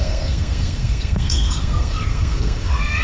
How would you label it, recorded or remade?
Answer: remade